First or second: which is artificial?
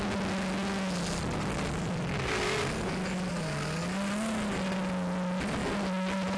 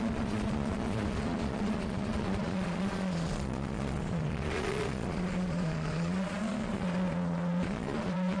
second